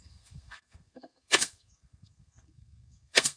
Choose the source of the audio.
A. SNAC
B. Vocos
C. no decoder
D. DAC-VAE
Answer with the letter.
A